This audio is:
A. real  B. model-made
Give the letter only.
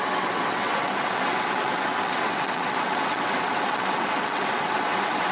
B